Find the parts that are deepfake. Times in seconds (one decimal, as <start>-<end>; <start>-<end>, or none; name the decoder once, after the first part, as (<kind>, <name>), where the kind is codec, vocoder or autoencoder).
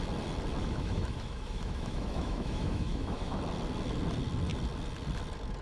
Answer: 0.6-3.4 (autoencoder, DAC-VAE)